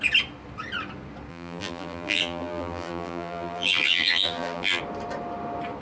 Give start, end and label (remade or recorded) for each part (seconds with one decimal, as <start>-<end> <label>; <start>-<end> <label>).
0.0-1.3 recorded; 1.3-4.8 remade; 4.8-5.8 recorded